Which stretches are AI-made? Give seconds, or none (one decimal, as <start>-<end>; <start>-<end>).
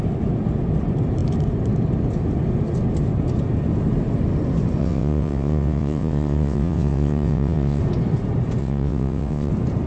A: 4.8-7.8; 8.6-9.5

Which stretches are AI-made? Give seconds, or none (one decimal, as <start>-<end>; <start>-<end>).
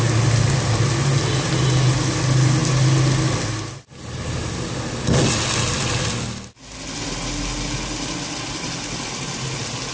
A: none